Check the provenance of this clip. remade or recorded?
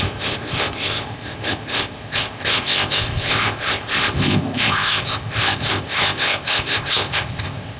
remade